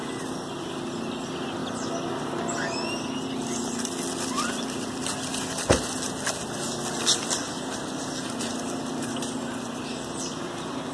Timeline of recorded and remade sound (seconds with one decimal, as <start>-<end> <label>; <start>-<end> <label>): 0.0-10.9 recorded